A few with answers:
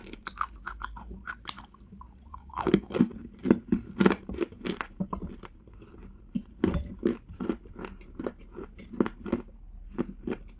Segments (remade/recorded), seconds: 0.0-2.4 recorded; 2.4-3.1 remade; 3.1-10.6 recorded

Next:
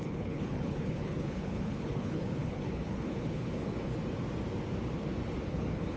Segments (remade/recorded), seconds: 0.0-3.9 remade; 3.9-5.5 recorded; 5.5-6.0 remade

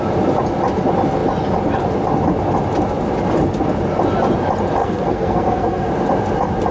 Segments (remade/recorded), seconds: 0.0-4.8 recorded; 4.8-5.9 remade; 5.9-6.7 recorded

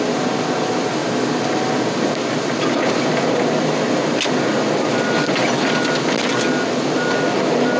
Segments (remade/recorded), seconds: 0.0-7.8 recorded

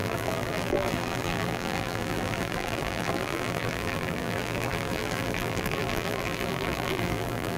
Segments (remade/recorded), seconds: 0.0-7.6 remade